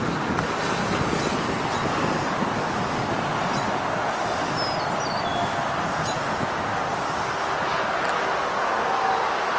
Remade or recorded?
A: recorded